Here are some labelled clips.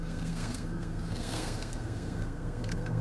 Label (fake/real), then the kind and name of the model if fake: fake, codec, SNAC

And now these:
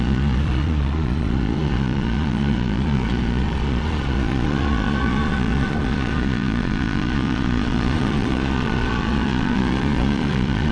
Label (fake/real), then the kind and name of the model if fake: fake, vocoder, Vocos